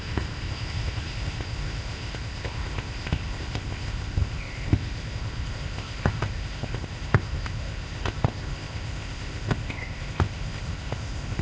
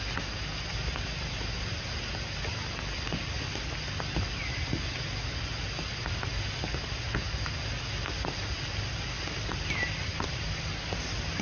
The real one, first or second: second